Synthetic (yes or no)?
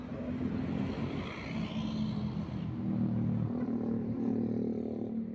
no